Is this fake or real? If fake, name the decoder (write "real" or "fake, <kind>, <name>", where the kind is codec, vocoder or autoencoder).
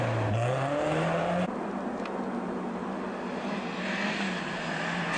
real